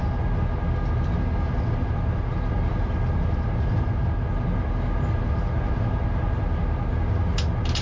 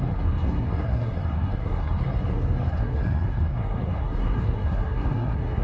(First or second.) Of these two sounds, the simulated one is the second